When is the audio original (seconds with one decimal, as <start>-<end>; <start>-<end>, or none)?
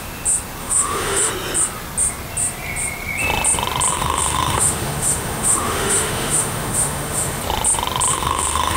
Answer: 0.0-0.6; 1.3-3.9; 7.4-8.1